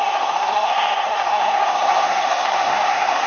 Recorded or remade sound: remade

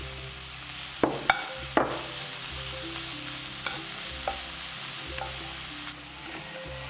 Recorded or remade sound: recorded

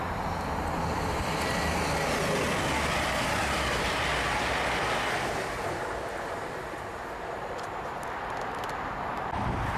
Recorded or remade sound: recorded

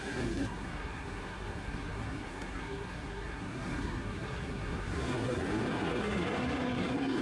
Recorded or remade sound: remade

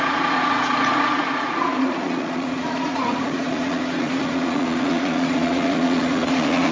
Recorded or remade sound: remade